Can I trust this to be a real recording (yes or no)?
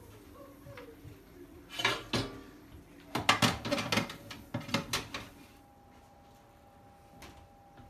yes